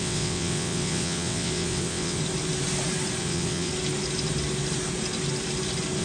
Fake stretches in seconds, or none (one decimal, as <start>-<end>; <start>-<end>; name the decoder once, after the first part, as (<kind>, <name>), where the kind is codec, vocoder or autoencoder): 0.0-2.2 (vocoder, WaveNeXt); 3.2-3.7